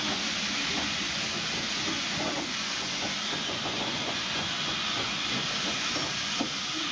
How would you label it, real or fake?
fake